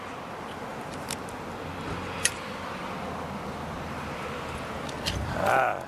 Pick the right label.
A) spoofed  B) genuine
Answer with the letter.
B